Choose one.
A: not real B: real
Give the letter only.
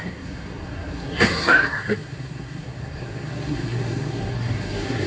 A